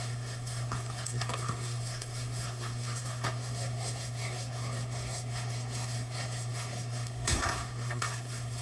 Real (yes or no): no